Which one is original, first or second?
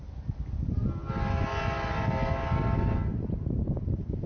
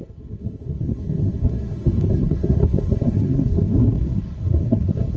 first